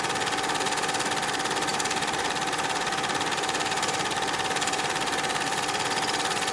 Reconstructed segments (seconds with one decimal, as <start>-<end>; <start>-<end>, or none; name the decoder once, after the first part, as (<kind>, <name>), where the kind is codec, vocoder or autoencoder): 1.7-5.6 (vocoder, BigVGAN v2)